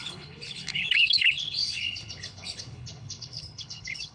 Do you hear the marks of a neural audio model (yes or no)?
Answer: yes